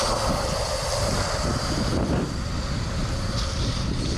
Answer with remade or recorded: recorded